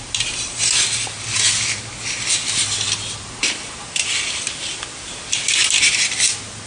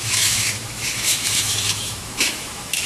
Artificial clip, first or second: second